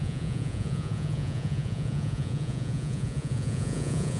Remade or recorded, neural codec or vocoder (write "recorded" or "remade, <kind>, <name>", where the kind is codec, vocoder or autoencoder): remade, vocoder, Vocos